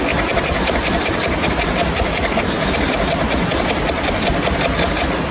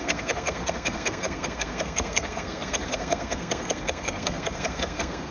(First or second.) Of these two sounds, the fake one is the second